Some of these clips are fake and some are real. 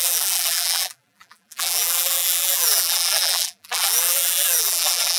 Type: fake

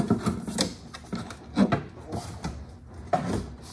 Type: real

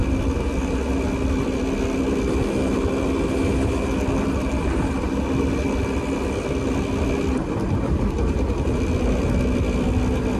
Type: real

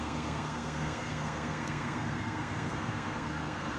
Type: fake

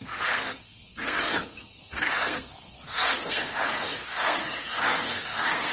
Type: fake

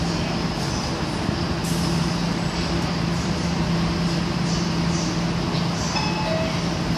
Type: real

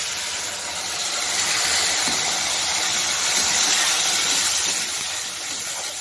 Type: real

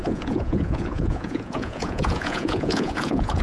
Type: fake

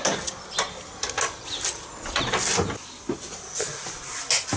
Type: real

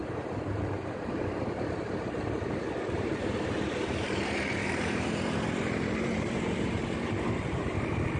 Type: fake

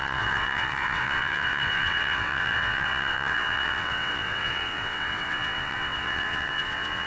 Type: fake